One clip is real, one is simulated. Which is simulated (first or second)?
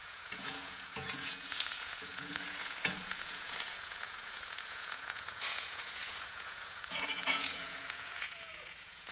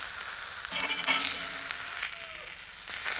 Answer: first